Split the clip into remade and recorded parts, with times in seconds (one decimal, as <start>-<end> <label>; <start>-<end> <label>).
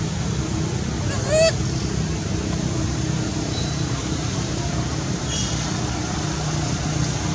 0.0-3.3 recorded; 3.3-5.2 remade; 5.2-7.3 recorded